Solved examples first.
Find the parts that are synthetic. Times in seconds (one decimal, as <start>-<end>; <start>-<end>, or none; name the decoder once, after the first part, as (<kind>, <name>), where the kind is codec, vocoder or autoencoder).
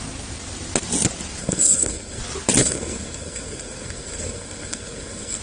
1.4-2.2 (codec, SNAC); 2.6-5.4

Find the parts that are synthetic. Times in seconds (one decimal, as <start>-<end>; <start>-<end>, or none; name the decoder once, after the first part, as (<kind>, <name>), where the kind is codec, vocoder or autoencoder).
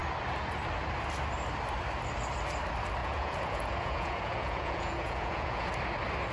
3.0-5.7 (vocoder, Vocos)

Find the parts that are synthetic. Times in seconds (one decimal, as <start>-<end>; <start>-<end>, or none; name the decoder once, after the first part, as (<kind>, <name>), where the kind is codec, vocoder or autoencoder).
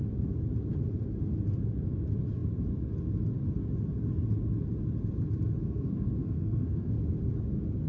5.6-6.9 (codec, SNAC)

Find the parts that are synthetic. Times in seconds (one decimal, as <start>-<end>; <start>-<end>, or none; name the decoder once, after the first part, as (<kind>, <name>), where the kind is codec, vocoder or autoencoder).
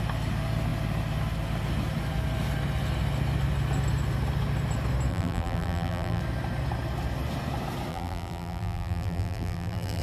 5.1-6.2 (vocoder, BigVGAN v2); 7.9-10.0